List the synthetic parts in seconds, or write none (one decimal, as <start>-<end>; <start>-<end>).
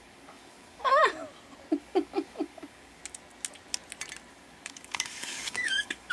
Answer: 0.0-1.0; 1.8-3.0; 4.3-6.1